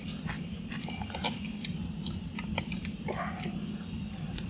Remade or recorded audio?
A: recorded